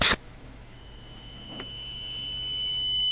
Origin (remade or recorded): remade